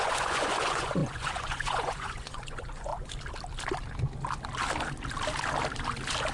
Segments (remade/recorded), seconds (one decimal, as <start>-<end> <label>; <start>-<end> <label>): 0.0-2.9 remade; 2.9-6.3 recorded